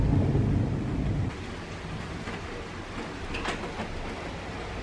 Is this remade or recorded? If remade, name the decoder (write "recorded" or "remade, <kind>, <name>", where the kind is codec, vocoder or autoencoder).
recorded